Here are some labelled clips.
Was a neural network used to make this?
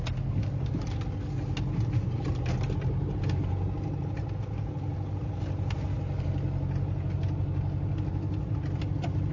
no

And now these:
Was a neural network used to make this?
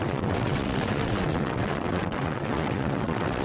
yes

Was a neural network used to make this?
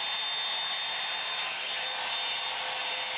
no